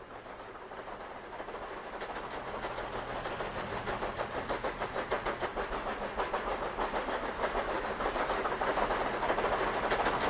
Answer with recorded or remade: recorded